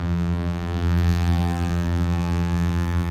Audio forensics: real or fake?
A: fake